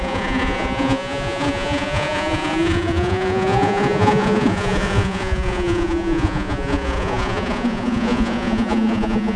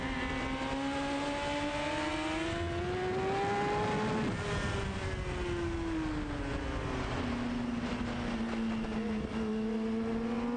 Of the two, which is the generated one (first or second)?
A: first